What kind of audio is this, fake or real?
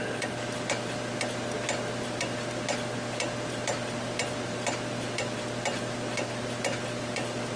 real